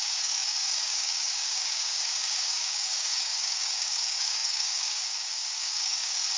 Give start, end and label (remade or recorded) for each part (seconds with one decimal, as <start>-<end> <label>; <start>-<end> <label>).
0.0-6.4 remade